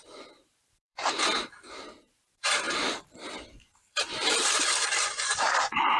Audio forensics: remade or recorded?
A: remade